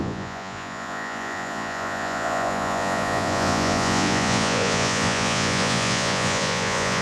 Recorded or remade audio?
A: remade